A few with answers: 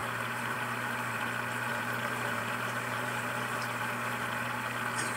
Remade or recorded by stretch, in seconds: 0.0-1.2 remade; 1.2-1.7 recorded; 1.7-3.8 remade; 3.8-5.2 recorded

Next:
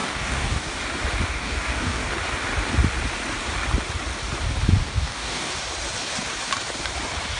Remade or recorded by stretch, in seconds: 0.0-0.7 remade; 0.7-1.3 recorded; 1.3-2.1 remade; 2.1-4.8 recorded; 4.8-5.5 remade; 5.5-7.4 recorded